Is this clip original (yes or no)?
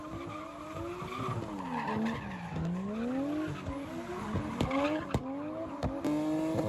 yes